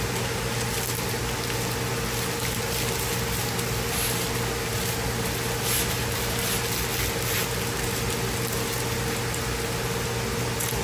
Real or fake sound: real